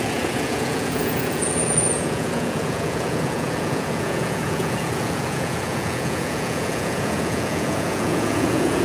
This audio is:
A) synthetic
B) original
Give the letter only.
A